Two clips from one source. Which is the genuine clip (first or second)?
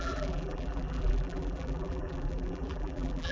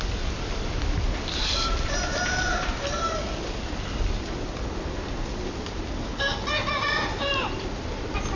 second